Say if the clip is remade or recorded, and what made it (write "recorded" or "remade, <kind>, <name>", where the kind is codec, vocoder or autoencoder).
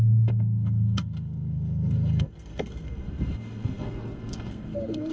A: remade, codec, SNAC